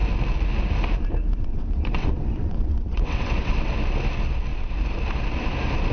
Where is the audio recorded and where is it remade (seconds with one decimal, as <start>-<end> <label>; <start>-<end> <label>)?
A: 0.0-1.4 recorded; 1.4-3.7 remade; 3.7-5.9 recorded